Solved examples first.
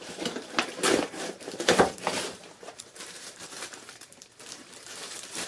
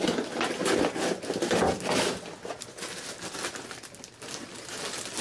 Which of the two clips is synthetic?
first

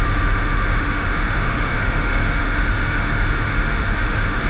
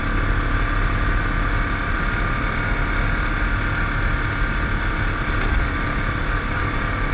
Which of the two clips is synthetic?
first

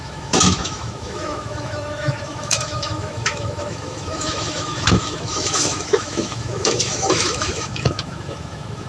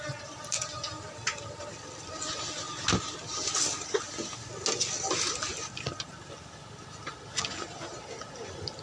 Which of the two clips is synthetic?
first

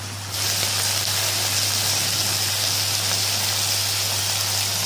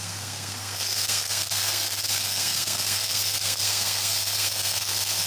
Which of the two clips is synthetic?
second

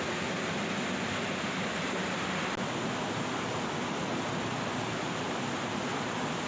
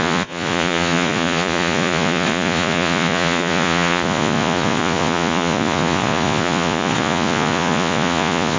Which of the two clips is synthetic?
second